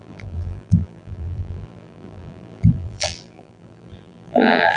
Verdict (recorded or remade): remade